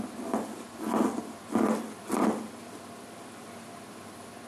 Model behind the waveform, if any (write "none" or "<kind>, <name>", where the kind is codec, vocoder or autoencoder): none